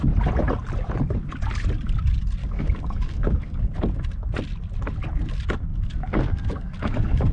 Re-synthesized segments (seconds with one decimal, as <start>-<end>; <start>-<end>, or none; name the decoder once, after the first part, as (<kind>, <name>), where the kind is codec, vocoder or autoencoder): 2.4-3.6 (codec, DAC); 5.7-7.3